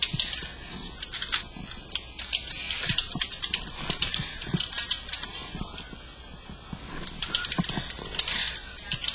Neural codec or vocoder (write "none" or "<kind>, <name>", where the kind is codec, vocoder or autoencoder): none